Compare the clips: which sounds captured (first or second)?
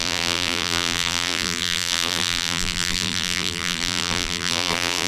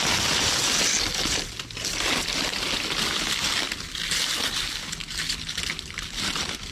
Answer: second